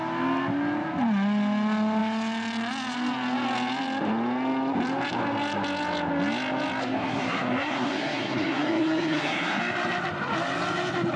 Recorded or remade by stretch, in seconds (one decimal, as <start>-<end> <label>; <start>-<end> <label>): 0.0-6.8 recorded; 6.8-9.6 remade; 9.6-11.2 recorded